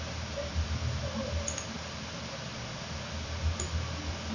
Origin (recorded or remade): recorded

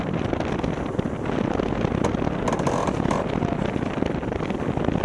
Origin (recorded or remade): recorded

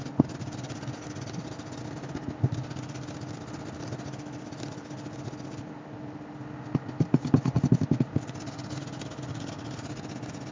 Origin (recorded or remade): recorded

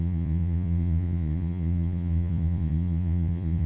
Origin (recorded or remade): remade